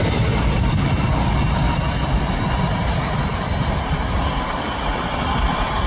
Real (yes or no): yes